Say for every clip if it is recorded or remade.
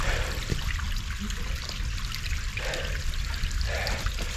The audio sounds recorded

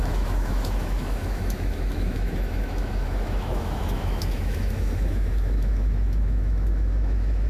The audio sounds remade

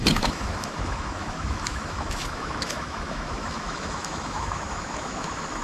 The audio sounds remade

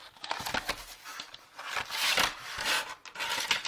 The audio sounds recorded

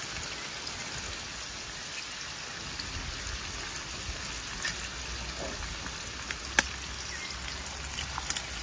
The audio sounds recorded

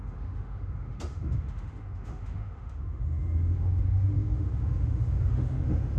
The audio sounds remade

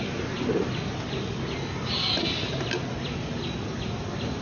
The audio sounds recorded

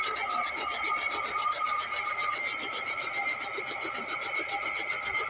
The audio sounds recorded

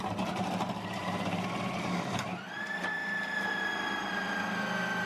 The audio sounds recorded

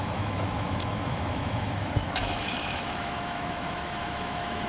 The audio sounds remade